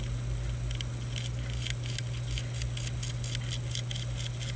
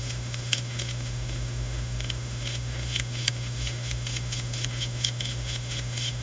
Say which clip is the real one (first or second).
first